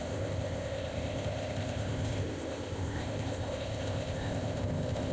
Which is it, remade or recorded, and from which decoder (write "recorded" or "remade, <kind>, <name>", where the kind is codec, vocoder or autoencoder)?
remade, codec, ZipCodec